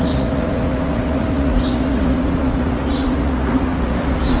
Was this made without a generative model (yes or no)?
no